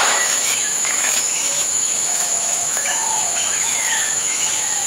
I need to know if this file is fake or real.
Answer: fake